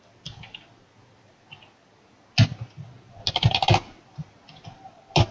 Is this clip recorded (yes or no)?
yes